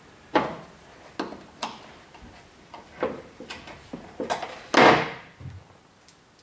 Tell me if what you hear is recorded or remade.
recorded